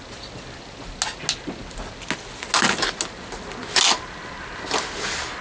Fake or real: real